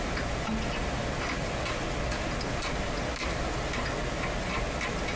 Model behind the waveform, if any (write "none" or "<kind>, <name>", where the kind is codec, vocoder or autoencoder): none